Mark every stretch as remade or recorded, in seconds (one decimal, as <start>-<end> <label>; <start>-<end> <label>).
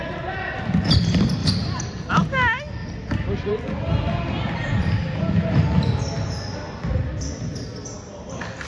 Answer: 0.0-2.8 recorded; 2.8-3.5 remade; 3.5-8.7 recorded